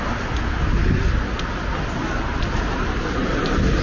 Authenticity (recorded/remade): recorded